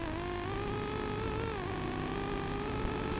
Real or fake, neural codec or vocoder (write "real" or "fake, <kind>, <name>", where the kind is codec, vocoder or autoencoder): real